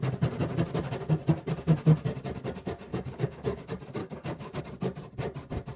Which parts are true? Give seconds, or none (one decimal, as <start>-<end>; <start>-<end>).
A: 0.0-2.9; 3.6-4.0; 4.6-5.8